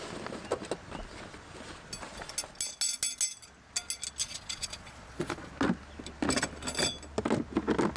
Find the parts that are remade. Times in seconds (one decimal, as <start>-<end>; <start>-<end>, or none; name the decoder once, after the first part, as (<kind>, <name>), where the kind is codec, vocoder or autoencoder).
4.2-5.5 (vocoder, Vocos)

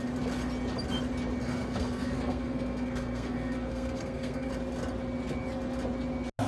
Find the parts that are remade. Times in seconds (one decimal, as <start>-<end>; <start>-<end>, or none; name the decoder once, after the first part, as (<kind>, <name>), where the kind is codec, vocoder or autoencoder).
1.4-4.5 (codec, SNAC)

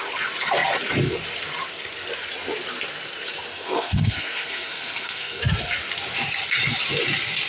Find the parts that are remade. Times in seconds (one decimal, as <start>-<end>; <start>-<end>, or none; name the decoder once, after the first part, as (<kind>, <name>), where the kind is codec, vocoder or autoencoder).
3.5-5.4 (codec, SNAC)

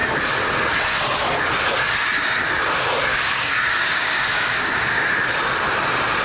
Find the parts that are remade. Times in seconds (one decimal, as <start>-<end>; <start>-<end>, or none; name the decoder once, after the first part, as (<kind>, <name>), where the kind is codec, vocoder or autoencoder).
3.1-5.0 (codec, DAC)

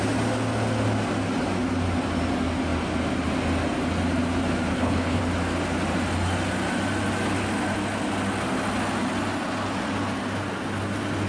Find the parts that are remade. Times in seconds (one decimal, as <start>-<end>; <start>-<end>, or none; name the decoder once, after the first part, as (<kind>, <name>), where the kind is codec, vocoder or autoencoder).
4.7-5.2 (codec, HILCodec)